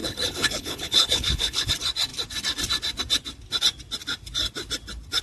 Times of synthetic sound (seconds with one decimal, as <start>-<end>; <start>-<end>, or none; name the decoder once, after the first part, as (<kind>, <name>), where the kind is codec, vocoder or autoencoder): 0.0-1.7 (codec, HILCodec)